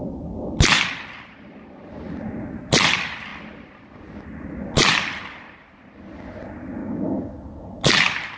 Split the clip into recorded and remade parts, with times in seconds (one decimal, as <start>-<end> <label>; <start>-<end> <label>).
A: 0.0-6.8 recorded; 6.8-7.3 remade; 7.3-8.4 recorded